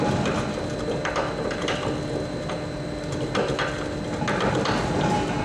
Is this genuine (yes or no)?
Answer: yes